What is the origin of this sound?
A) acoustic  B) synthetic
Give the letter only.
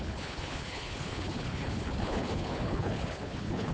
B